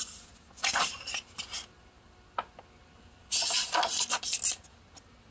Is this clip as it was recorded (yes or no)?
yes